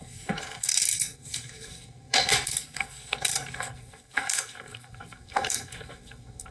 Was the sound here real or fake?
fake